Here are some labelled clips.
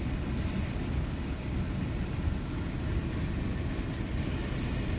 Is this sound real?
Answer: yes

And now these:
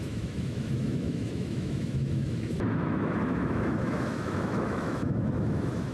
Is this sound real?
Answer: no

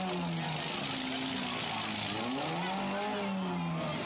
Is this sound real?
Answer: yes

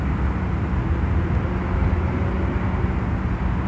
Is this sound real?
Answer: yes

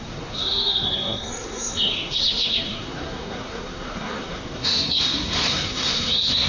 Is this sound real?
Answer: no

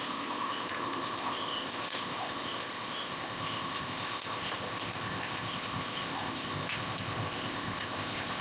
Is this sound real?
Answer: no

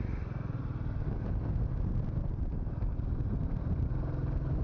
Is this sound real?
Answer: yes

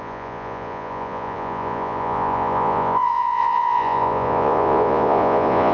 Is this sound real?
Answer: no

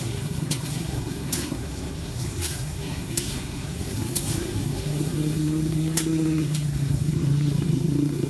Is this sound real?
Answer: no